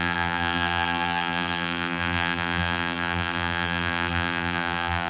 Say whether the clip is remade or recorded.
remade